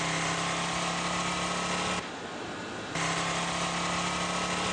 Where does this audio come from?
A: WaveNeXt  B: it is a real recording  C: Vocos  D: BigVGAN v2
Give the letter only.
B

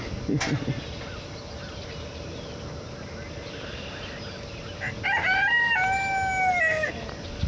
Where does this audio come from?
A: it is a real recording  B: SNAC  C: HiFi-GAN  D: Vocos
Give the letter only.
A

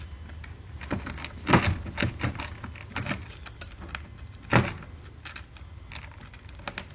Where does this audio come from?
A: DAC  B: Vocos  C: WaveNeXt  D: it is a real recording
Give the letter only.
D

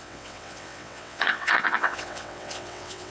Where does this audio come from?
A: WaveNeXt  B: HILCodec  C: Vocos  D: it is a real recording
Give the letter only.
A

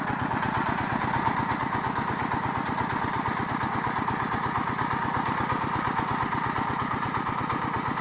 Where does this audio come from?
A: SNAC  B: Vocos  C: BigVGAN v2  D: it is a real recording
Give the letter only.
D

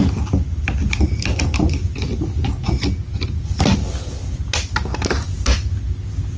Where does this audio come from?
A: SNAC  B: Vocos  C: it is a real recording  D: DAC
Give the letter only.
C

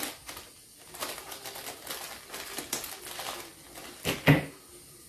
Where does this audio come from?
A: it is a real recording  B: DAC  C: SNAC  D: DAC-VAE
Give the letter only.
A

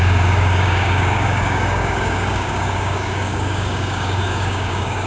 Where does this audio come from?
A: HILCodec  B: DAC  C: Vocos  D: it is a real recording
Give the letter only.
B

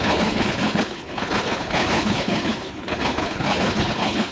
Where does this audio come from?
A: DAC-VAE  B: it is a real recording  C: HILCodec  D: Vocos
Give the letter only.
C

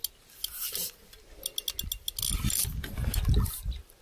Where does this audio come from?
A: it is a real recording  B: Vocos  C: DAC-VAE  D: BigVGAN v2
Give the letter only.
A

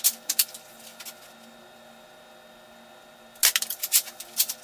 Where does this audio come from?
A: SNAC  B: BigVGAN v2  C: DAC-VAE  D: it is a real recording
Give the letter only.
D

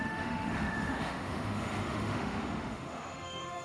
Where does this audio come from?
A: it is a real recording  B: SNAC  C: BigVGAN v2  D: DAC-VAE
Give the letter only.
D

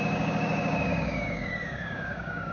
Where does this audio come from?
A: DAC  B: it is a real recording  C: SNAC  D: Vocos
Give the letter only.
A